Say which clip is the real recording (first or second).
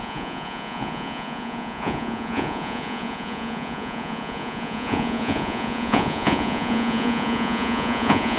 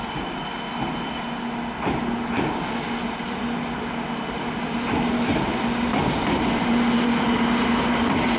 second